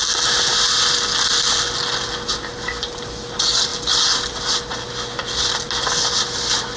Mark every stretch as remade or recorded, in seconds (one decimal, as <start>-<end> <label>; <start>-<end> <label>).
0.0-6.8 recorded